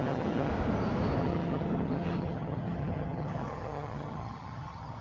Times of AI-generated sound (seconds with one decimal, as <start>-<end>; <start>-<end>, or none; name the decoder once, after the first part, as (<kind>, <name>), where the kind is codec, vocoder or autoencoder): 0.0-0.5 (vocoder, HiFi-GAN); 1.2-5.0